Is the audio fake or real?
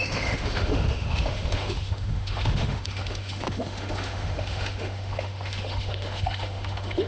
fake